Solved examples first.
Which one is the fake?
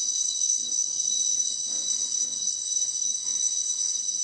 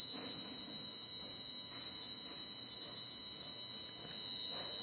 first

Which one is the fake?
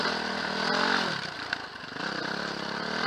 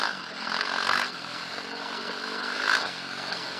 second